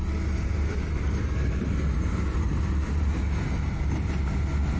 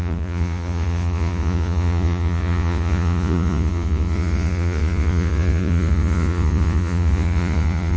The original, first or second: first